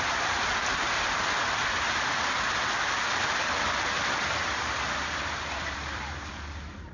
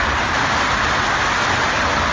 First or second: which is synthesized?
first